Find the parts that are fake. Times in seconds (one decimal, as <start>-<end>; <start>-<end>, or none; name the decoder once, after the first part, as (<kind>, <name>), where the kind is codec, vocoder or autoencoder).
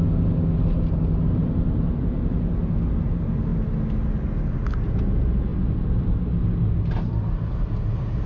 1.4-2.5 (vocoder, BigVGAN v2); 5.5-6.4